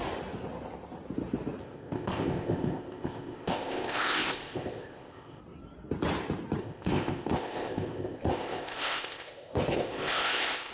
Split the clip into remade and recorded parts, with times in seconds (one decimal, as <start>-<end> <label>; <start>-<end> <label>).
0.0-1.6 recorded; 1.6-5.4 remade; 5.4-6.6 recorded; 6.6-10.7 remade